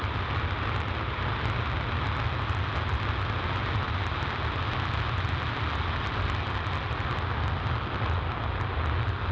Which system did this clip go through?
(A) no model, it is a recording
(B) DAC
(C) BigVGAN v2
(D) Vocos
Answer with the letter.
A